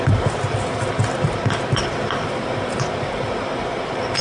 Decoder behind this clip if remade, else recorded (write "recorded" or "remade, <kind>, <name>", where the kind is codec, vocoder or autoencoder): recorded